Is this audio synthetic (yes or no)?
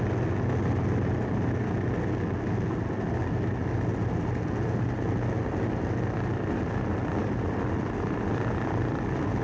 no